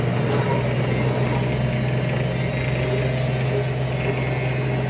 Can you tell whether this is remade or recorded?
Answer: recorded